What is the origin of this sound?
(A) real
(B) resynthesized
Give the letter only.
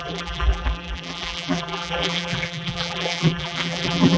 B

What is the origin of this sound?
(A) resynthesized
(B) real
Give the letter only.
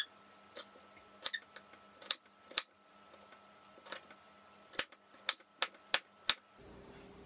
B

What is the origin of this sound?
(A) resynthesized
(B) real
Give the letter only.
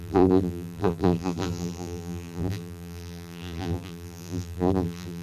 A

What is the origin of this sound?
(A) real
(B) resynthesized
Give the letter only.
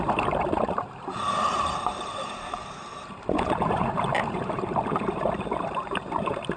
B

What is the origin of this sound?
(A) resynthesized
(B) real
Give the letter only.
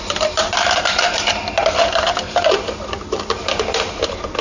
A